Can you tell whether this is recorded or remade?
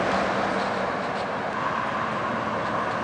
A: recorded